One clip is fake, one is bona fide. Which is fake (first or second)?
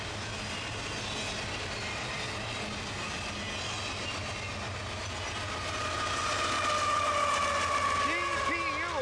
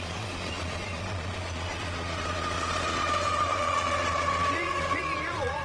second